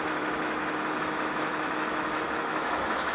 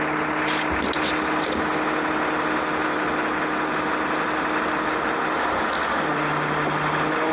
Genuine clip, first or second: second